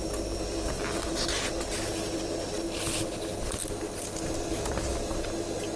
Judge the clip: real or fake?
real